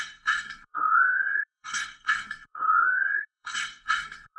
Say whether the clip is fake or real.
fake